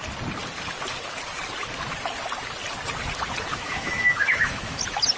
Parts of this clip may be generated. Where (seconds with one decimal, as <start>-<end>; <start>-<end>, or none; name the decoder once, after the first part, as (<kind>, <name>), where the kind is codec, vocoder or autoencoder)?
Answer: 3.5-4.8 (autoencoder, DAC-VAE)